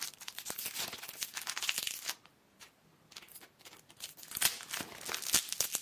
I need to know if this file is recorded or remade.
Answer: recorded